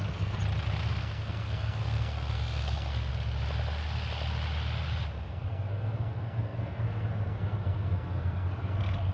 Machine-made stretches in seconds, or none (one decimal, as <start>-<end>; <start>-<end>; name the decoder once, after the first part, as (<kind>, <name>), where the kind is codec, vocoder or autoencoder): 0.0-0.4 (codec, SNAC); 1.0-3.1; 5.1-9.1